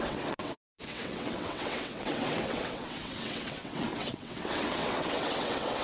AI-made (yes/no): yes